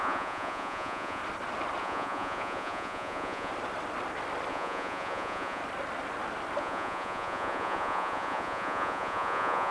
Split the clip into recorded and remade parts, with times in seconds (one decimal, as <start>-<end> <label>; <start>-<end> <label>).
0.0-1.2 remade; 1.2-1.8 recorded; 1.8-3.5 remade; 3.5-4.5 recorded; 4.5-5.6 remade; 5.6-6.6 recorded; 6.6-9.7 remade